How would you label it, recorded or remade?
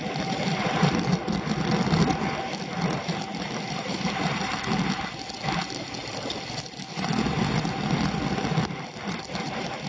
remade